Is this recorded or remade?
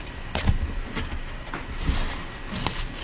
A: recorded